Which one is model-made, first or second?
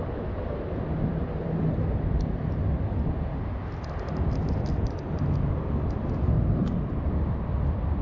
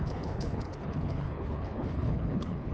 second